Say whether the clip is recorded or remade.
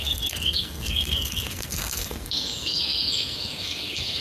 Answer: remade